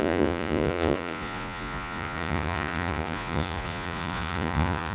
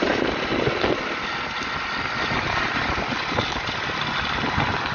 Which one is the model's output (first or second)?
first